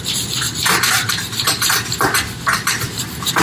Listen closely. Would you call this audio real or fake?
real